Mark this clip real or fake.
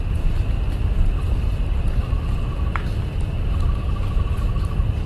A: real